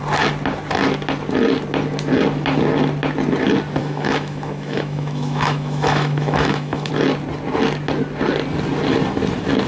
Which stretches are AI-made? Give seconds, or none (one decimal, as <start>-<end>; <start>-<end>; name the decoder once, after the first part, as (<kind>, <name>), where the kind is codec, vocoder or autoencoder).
3.8-6.9 (autoencoder, DAC-VAE)